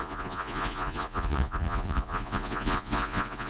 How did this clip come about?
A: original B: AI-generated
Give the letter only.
B